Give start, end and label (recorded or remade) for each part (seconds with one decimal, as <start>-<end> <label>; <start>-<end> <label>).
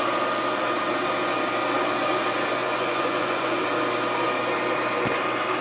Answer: 0.0-2.6 recorded; 2.6-3.6 remade; 3.6-5.6 recorded